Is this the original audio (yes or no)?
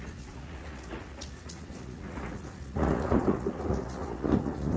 no